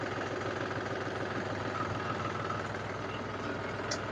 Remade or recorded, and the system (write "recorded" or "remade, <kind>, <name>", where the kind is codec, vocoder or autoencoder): recorded